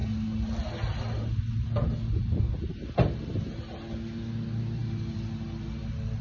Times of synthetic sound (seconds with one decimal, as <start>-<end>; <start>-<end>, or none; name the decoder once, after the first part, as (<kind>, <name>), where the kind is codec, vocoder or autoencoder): none